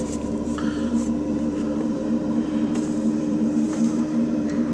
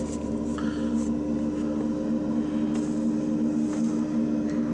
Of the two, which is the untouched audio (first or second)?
second